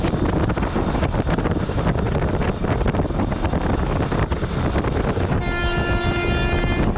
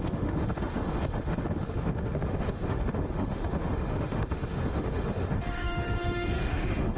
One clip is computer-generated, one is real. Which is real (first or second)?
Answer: first